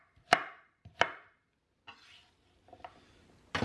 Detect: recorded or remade recorded